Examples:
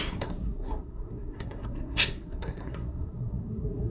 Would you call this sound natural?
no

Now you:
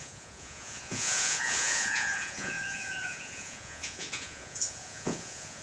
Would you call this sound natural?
no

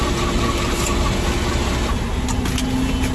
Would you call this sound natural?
yes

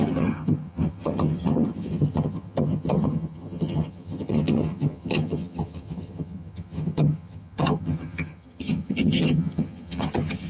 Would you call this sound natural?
no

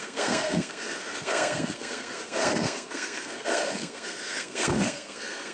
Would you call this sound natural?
no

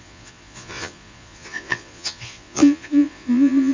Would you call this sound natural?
no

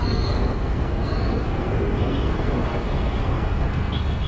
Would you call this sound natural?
no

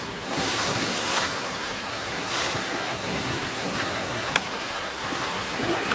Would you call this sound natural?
no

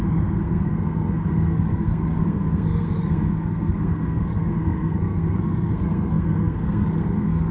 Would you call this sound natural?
no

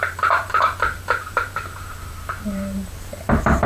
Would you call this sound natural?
no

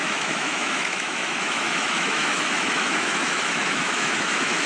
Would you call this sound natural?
no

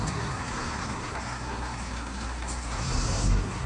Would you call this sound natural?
no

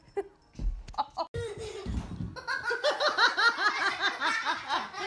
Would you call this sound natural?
yes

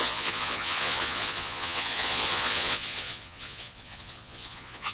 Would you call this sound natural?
no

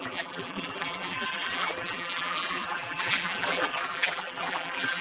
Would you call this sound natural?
no